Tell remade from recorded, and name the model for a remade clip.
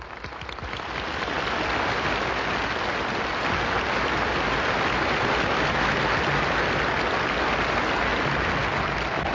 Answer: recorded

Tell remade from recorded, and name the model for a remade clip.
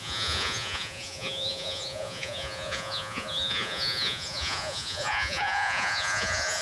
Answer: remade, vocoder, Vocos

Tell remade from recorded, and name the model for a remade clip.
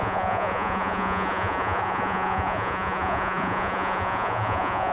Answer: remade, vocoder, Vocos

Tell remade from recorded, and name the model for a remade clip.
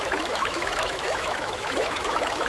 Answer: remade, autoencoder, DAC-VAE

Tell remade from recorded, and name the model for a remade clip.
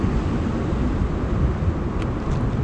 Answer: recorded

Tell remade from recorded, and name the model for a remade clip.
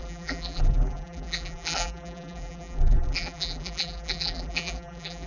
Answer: remade, vocoder, BigVGAN v2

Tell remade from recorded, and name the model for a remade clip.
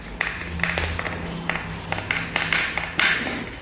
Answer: recorded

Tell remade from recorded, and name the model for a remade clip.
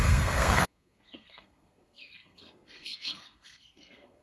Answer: remade, codec, SNAC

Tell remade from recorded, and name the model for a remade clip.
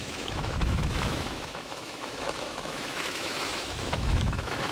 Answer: remade, autoencoder, DAC-VAE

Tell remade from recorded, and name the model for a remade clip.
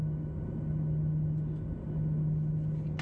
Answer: recorded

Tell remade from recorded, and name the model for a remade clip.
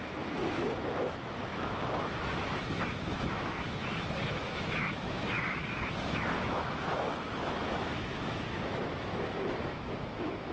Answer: remade, autoencoder, DAC-VAE